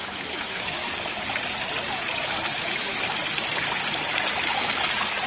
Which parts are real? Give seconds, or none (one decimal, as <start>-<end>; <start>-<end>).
0.9-2.5; 3.2-5.3